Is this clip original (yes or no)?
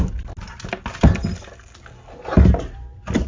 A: yes